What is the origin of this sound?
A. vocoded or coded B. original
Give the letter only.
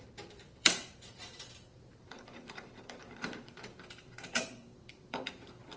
A